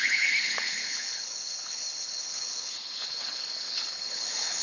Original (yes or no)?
no